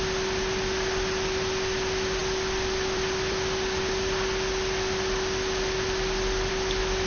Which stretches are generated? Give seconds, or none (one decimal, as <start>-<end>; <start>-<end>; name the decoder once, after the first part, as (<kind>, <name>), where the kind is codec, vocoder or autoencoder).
none